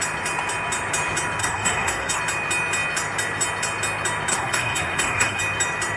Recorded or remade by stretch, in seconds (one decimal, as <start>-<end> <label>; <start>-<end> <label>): 0.0-1.4 recorded; 1.4-2.2 remade; 2.2-4.3 recorded; 4.3-5.4 remade; 5.4-6.0 recorded